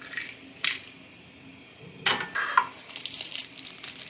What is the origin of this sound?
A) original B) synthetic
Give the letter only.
A